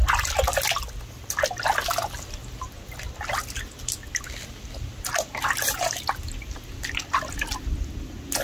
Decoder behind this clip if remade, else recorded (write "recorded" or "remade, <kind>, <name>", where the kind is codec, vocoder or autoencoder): recorded